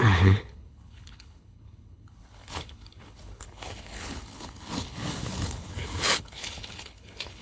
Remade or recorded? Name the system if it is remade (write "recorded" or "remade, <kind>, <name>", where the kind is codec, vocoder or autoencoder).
remade, codec, HILCodec